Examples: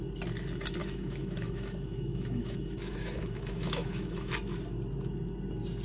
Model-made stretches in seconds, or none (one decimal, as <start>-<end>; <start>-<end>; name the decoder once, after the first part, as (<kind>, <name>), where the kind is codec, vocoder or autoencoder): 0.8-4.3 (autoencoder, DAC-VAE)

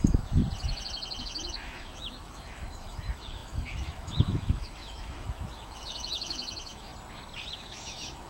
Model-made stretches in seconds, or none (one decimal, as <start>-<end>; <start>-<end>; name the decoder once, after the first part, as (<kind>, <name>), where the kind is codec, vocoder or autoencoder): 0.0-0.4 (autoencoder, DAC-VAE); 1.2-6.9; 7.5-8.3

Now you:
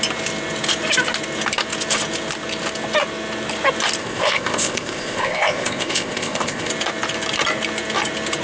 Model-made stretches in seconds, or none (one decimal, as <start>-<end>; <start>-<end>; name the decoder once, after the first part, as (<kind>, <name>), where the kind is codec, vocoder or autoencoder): 4.0-6.7 (codec, ZipCodec)

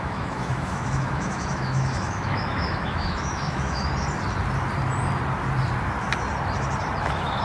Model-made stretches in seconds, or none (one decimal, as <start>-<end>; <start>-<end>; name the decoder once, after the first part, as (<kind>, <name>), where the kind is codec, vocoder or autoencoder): 0.0-3.9 (autoencoder, DAC-VAE); 7.0-7.4